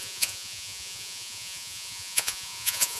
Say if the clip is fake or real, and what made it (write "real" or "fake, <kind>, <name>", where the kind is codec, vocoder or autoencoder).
fake, vocoder, Vocos